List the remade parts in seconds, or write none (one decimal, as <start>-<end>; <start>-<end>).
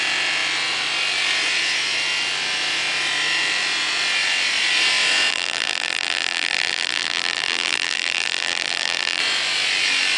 5.3-9.2